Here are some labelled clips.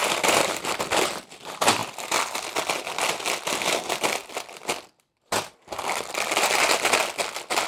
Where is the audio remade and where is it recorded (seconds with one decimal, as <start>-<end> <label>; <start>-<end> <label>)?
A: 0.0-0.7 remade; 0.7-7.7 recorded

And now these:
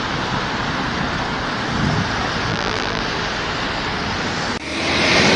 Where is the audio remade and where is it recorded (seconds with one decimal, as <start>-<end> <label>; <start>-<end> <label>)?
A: 0.0-2.5 recorded; 2.5-3.0 remade; 3.0-5.4 recorded

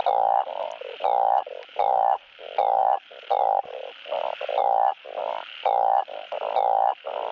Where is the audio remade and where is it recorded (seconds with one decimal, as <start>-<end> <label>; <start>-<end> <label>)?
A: 0.0-7.3 recorded

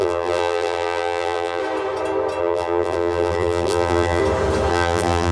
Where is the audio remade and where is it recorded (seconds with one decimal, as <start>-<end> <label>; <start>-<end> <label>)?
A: 0.0-1.6 remade; 1.6-2.4 recorded; 2.4-4.2 remade; 4.2-4.7 recorded; 4.7-5.3 remade

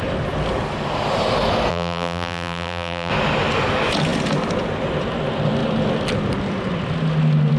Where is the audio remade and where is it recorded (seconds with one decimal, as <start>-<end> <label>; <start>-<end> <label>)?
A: 0.0-1.7 recorded; 1.7-3.1 remade; 3.1-7.6 recorded